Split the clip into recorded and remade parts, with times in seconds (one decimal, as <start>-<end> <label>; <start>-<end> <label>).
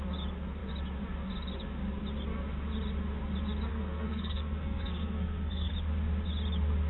0.0-3.7 recorded; 3.7-5.7 remade; 5.7-6.9 recorded